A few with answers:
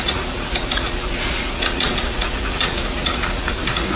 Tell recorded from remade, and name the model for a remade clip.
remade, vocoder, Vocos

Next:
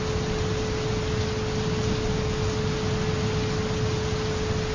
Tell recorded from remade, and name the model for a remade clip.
recorded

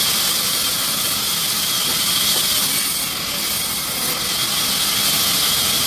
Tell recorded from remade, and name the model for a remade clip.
recorded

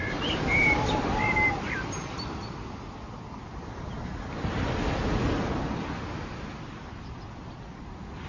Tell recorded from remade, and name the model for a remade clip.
recorded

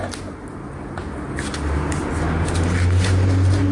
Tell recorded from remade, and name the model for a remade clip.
recorded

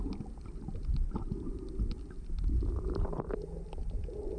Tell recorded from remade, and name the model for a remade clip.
recorded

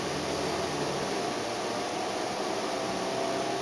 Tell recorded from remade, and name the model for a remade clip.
recorded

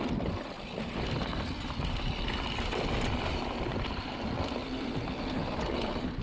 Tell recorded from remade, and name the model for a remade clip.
recorded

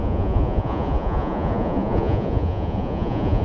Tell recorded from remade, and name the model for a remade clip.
remade, vocoder, Vocos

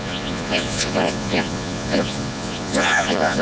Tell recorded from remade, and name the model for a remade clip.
remade, vocoder, Vocos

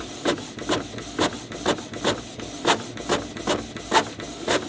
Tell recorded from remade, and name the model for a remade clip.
recorded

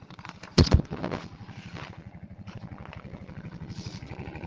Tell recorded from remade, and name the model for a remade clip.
remade, vocoder, Vocos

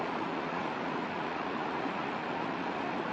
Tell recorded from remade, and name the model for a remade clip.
remade, vocoder, Vocos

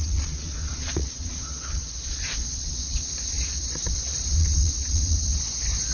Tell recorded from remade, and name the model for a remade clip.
remade, vocoder, Vocos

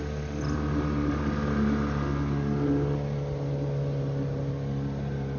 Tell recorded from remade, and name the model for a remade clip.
recorded